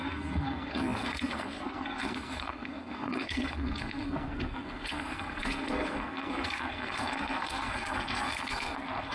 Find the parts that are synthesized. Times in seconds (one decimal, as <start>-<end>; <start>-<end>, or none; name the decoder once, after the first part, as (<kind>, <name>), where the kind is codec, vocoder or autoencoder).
0.0-9.1 (codec, SNAC)